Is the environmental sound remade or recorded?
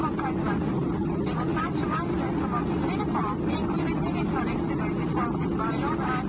recorded